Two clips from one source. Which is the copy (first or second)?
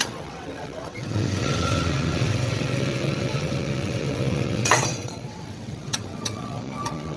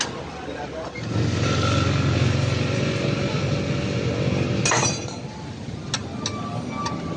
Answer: first